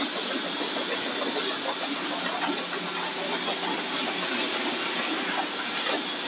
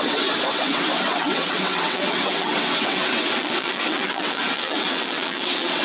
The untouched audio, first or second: first